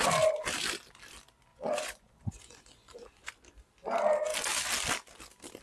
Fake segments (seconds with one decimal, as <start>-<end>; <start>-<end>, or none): 1.5-3.3